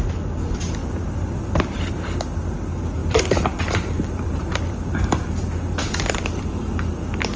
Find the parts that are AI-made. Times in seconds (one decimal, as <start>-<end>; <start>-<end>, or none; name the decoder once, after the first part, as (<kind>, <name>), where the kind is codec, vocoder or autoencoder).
3.0-6.8 (vocoder, BigVGAN v2)